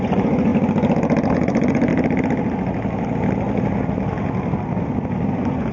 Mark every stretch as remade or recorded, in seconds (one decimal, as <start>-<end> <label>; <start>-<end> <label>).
0.0-0.5 remade; 0.5-1.3 recorded; 1.3-1.9 remade; 1.9-5.3 recorded; 5.3-5.7 remade